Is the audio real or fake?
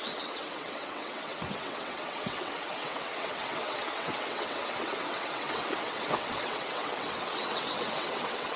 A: fake